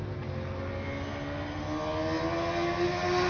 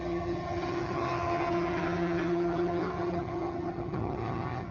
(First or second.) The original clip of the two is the first